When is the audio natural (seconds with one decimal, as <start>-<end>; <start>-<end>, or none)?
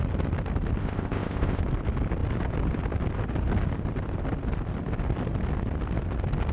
0.0-0.8; 1.6-6.5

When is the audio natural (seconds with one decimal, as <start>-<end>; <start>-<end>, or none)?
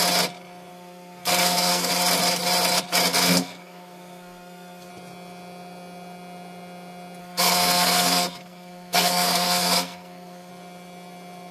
0.0-0.7; 1.9-3.1; 4.9-7.2; 10.5-11.5